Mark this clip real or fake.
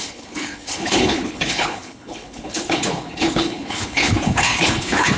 fake